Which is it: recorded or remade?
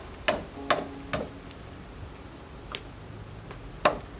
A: recorded